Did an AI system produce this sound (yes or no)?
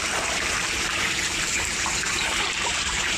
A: yes